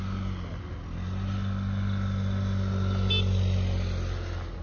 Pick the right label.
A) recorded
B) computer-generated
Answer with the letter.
A